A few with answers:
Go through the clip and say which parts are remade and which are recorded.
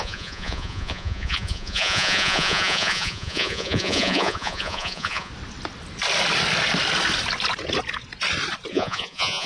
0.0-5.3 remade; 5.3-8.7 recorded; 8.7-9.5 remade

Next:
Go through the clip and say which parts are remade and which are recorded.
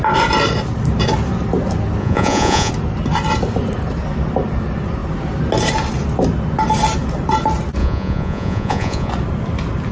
0.0-2.0 recorded; 2.0-2.7 remade; 2.7-7.8 recorded; 7.8-9.1 remade; 9.1-9.9 recorded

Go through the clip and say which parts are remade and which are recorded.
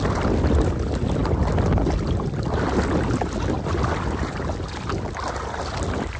0.0-6.2 recorded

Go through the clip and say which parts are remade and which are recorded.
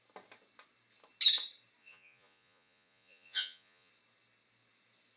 0.0-1.8 recorded; 1.8-3.9 remade; 3.9-5.2 recorded